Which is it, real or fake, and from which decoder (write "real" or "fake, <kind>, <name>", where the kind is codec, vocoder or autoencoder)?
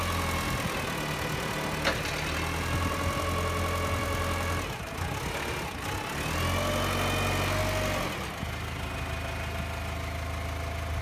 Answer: real